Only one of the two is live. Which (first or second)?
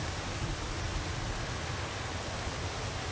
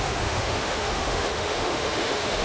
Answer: first